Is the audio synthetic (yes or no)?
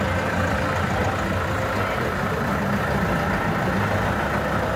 no